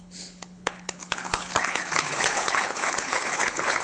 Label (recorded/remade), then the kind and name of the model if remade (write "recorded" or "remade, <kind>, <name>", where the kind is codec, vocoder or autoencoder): remade, codec, HILCodec